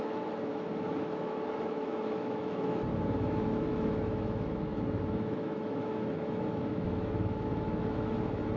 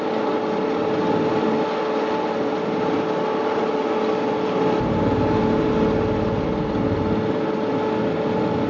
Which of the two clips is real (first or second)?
second